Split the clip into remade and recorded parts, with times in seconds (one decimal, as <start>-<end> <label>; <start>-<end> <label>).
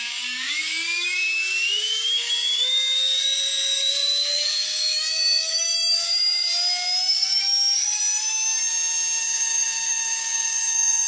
0.0-6.5 remade; 6.5-7.1 recorded; 7.1-8.0 remade; 8.0-9.2 recorded; 9.2-11.1 remade